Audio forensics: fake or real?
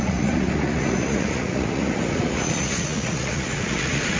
fake